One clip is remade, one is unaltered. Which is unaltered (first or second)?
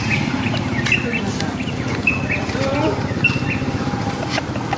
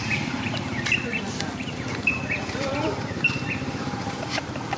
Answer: first